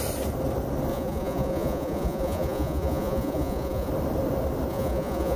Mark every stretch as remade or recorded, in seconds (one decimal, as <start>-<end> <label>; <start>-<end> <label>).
0.0-0.9 recorded; 0.9-3.9 remade; 3.9-4.7 recorded; 4.7-5.4 remade